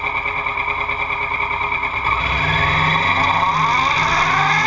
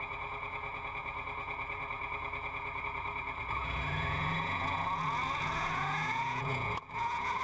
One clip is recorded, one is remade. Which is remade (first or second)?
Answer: second